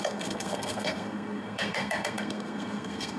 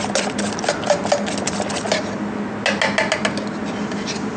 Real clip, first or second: second